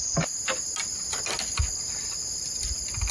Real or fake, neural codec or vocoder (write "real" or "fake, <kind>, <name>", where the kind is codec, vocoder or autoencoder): real